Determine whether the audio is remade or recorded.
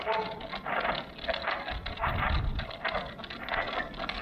remade